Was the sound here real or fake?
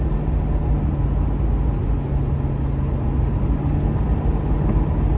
real